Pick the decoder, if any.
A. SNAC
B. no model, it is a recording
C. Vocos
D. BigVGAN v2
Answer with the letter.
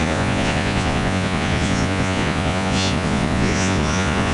C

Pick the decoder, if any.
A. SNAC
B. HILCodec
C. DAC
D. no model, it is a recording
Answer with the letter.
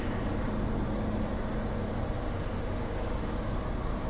D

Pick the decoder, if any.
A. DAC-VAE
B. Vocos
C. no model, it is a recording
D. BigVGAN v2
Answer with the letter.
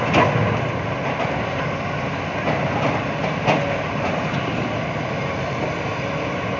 C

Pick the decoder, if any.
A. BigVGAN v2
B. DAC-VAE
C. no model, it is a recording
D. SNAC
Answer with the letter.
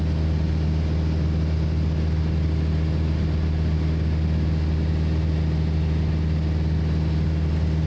C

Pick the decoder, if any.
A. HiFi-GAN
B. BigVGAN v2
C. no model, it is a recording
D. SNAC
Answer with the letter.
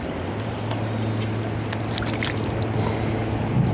C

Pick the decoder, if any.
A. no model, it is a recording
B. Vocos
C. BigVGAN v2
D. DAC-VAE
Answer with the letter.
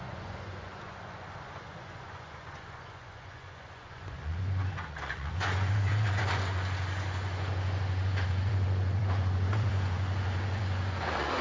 B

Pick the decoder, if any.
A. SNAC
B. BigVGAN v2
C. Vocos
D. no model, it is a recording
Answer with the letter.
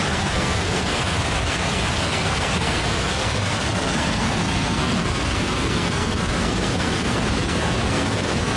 A